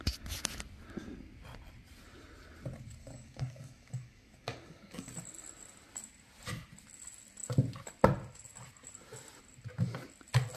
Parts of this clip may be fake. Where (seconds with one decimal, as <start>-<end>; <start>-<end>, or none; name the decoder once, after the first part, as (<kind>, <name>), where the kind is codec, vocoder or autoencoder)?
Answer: 3.0-5.1 (codec, DAC)